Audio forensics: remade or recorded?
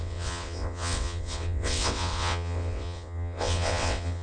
remade